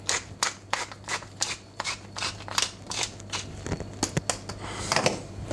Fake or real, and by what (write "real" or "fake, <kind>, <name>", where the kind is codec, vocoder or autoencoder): real